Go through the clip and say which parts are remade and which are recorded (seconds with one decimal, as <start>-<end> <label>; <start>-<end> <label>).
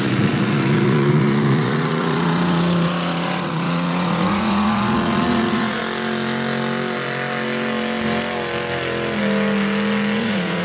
0.0-5.8 remade; 5.8-10.2 recorded; 10.2-10.6 remade